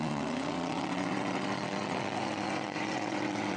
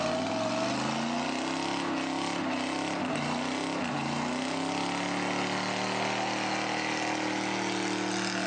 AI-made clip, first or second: first